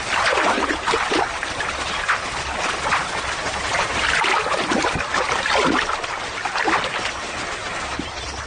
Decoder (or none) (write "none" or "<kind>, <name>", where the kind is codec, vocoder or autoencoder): none